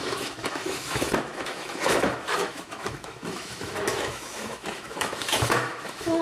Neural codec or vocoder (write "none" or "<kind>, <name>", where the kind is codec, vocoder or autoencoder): autoencoder, DAC-VAE